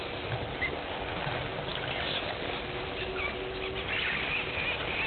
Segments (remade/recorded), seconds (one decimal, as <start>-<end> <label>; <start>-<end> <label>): 0.0-5.1 recorded